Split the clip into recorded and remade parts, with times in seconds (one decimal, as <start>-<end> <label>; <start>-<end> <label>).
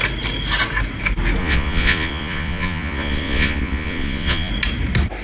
0.0-1.4 recorded; 1.4-4.5 remade; 4.5-5.2 recorded